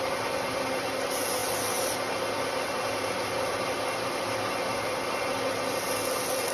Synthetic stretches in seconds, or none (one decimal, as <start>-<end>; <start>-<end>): none